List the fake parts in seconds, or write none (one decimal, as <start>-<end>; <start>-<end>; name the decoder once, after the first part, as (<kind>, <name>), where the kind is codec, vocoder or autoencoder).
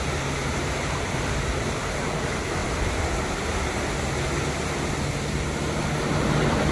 0.5-1.3 (vocoder, BigVGAN v2)